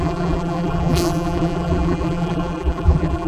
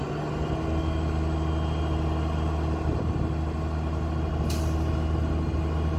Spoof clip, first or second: first